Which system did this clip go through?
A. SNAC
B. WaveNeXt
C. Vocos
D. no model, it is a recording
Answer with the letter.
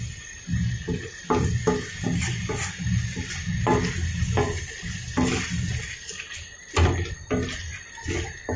D